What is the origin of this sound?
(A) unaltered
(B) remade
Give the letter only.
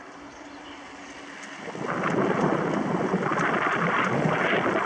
A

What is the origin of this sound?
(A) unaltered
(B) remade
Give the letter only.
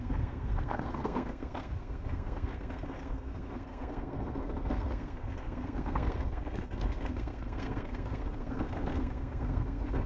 B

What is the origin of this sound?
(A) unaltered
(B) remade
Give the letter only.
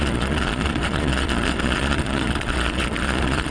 B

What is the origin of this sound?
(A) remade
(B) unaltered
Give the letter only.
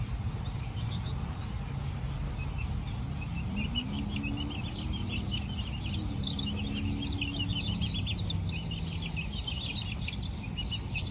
B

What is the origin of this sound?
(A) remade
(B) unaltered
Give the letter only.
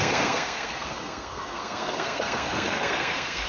A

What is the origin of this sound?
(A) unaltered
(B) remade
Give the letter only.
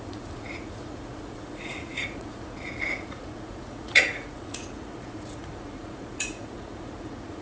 B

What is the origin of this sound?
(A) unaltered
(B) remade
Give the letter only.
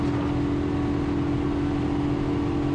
A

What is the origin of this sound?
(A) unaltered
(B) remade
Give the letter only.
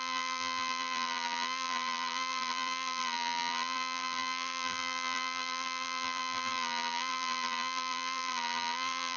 B